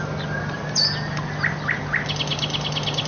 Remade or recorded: recorded